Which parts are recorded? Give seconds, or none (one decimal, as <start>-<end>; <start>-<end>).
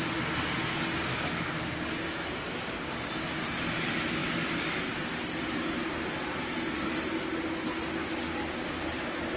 0.0-1.1; 3.1-9.4